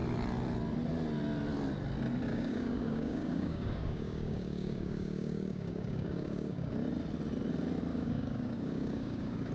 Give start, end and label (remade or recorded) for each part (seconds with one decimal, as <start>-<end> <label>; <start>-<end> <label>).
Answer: 0.0-2.3 recorded; 2.3-6.7 remade; 6.7-7.9 recorded; 7.9-9.5 remade